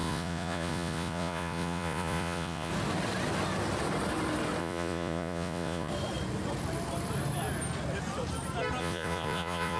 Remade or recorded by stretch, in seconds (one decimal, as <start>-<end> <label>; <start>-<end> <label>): 0.0-2.7 remade; 2.7-4.6 recorded; 4.6-5.9 remade; 5.9-8.8 recorded; 8.8-9.8 remade

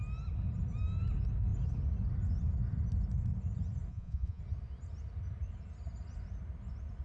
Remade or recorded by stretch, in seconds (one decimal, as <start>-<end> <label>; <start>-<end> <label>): 0.0-3.9 recorded; 3.9-4.4 remade; 4.4-7.0 recorded